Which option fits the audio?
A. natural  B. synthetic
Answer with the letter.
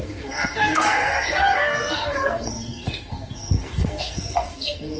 B